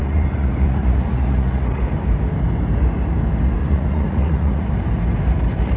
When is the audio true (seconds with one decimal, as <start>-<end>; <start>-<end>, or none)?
1.8-3.6; 4.7-5.8